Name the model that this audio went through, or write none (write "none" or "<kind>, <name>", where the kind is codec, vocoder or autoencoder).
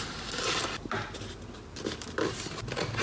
none